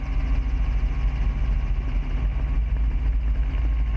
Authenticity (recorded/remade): recorded